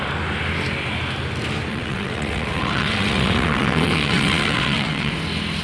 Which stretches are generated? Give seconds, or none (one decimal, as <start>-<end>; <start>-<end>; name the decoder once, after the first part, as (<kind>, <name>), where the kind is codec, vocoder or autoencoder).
1.7-5.1 (vocoder, WaveNeXt)